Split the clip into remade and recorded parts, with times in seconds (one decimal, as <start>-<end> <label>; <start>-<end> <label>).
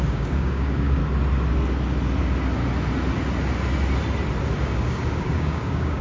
0.0-1.0 remade; 1.0-4.6 recorded; 4.6-6.0 remade